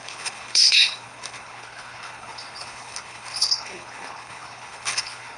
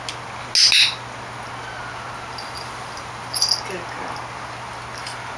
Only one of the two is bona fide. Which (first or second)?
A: second